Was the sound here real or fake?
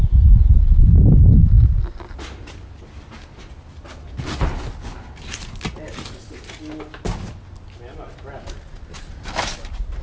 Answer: real